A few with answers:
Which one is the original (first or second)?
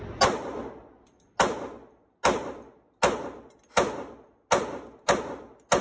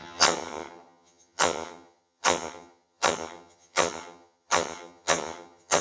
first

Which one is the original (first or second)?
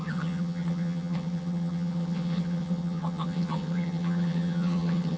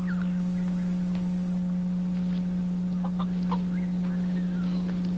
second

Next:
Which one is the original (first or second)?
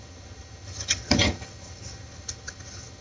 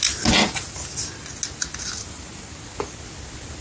second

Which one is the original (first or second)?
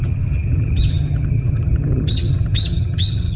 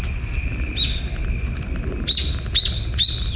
second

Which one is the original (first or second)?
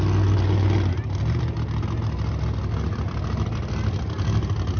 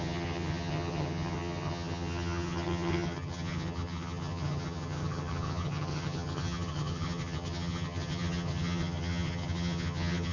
first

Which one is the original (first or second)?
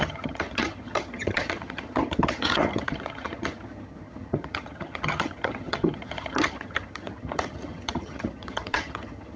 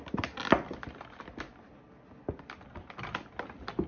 second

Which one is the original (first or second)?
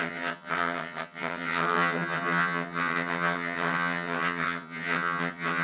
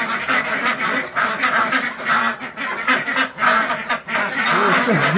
second